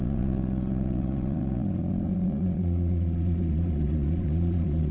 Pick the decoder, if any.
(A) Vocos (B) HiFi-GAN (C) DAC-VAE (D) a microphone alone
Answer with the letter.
A